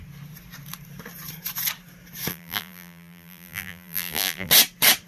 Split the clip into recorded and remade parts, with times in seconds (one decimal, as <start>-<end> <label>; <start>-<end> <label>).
0.0-2.3 recorded; 2.3-4.5 remade; 4.5-5.1 recorded